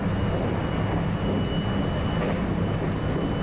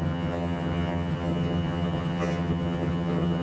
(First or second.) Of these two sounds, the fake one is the second